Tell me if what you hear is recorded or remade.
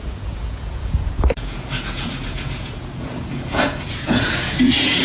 remade